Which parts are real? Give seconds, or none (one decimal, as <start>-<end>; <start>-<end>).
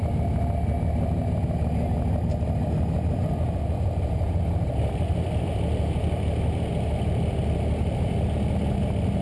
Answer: 0.0-2.6; 6.7-9.2